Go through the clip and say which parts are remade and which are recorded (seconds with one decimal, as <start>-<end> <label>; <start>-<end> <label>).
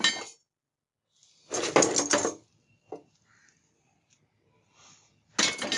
0.0-5.8 recorded